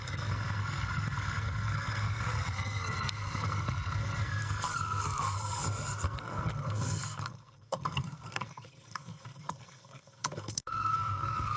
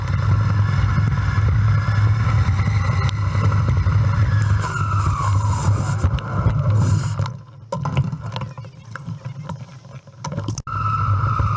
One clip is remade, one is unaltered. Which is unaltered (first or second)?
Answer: second